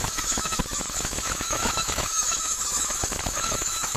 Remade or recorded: remade